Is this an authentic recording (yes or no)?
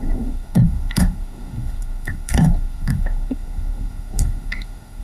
no